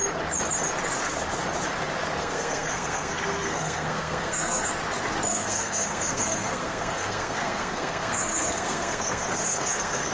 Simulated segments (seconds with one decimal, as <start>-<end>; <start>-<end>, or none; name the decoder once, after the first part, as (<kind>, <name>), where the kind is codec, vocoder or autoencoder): 2.2-4.7 (codec, SNAC); 5.3-10.1